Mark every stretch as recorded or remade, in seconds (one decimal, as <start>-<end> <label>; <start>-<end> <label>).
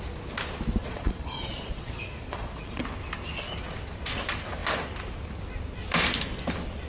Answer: 0.0-0.8 recorded; 0.8-2.8 remade; 2.8-6.9 recorded